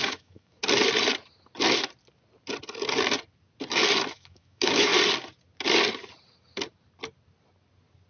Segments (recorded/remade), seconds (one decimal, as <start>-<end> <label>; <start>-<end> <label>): 0.0-0.6 remade; 0.6-4.1 recorded; 4.1-4.9 remade; 4.9-8.1 recorded